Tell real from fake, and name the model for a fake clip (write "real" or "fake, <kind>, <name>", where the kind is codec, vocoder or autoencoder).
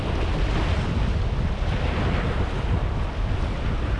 real